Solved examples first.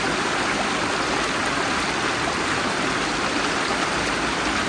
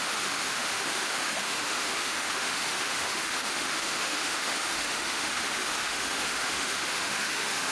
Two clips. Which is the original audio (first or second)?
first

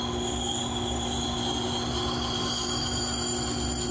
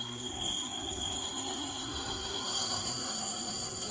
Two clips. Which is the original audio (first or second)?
first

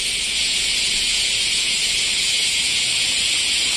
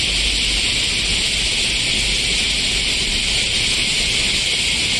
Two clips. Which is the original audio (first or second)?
second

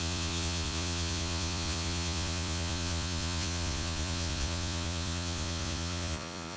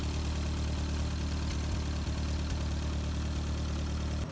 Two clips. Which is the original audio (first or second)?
second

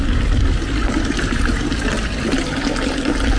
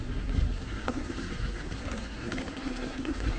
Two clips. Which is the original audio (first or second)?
first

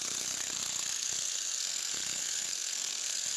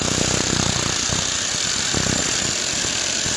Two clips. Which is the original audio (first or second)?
second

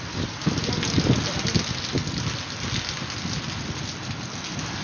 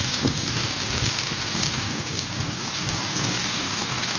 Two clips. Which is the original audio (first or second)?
first